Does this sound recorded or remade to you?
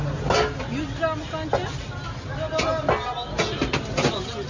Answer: recorded